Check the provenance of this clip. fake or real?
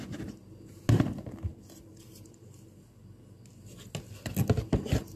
real